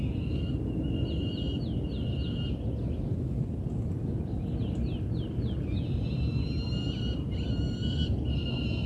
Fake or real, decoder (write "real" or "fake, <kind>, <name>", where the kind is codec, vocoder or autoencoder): real